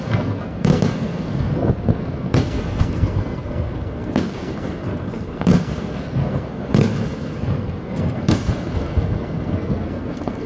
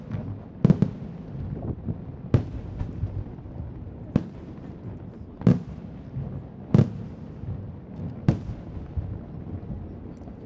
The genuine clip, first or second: second